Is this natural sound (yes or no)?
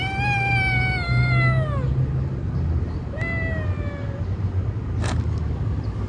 yes